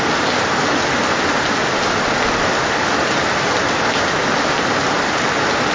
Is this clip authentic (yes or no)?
yes